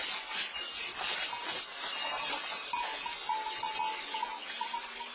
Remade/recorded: recorded